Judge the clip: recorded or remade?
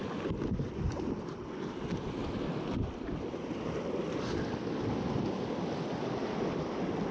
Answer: recorded